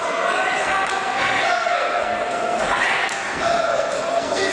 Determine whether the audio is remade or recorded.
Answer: remade